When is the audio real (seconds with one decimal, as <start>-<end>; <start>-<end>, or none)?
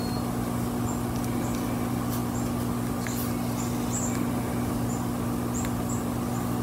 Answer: 0.0-6.6